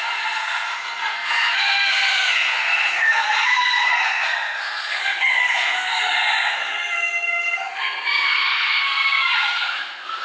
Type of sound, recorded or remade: remade